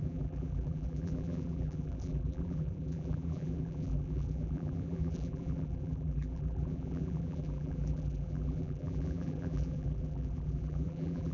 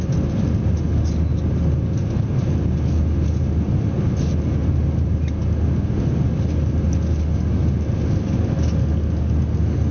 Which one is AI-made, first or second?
first